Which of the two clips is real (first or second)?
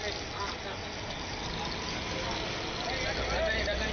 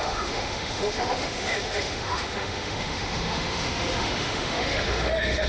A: first